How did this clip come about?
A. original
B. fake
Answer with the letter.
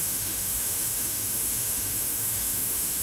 B